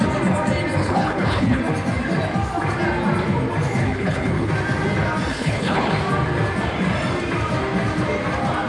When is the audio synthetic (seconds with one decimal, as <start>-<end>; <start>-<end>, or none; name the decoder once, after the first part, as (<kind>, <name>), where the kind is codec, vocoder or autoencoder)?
0.8-1.6 (codec, HILCodec); 3.8-4.5; 5.3-5.9